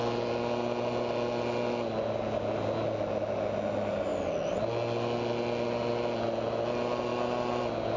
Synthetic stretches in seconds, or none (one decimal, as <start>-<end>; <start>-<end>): none